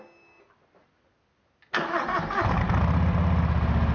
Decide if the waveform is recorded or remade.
recorded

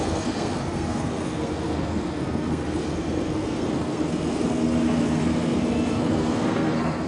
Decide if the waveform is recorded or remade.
remade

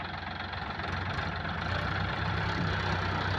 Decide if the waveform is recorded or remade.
recorded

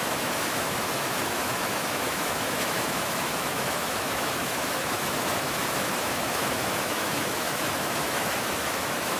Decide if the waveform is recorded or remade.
remade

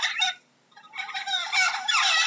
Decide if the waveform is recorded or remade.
recorded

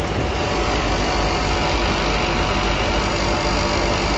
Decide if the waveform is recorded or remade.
recorded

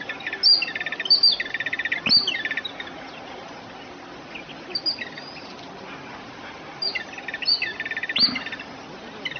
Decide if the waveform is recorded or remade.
recorded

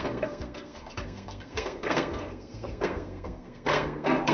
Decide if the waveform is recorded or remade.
remade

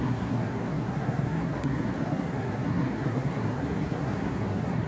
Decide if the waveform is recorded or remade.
remade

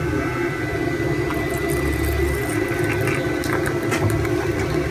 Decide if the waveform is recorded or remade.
recorded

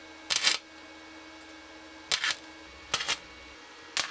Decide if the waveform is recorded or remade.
recorded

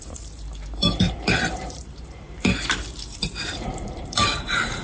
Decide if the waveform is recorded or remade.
remade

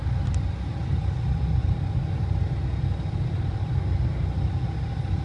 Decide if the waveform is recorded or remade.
recorded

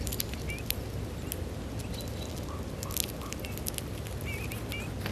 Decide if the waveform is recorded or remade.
recorded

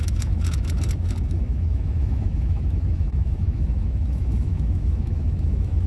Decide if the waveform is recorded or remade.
remade